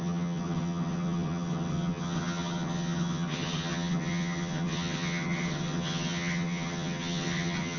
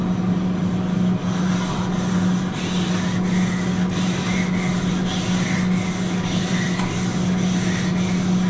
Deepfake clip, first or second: first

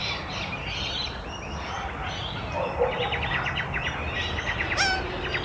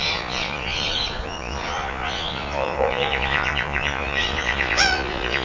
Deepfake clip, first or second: second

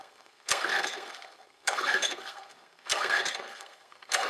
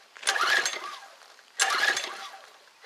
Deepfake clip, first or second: first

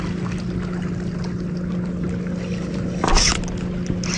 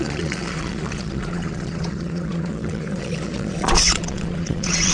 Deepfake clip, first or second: second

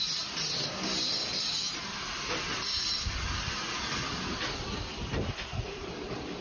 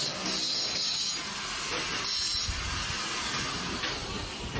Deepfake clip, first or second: first